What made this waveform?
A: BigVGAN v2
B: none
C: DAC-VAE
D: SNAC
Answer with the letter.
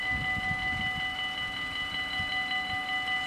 B